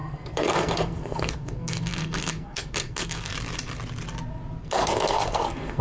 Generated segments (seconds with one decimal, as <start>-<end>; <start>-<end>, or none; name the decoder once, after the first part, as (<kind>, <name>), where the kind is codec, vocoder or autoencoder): 0.0-3.3 (codec, SNAC); 4.6-5.8